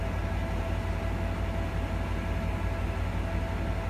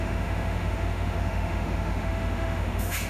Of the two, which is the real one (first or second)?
first